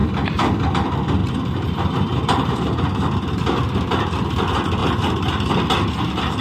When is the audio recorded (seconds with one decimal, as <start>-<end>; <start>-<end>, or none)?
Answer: 0.5-1.2; 3.4-4.8; 5.5-6.4